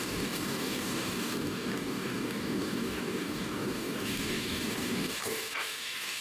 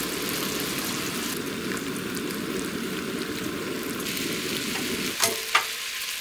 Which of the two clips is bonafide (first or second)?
second